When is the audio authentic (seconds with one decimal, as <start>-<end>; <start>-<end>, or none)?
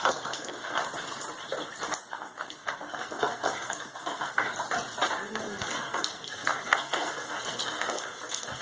0.8-2.1; 4.5-5.3